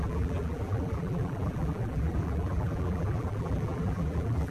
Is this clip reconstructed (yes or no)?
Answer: yes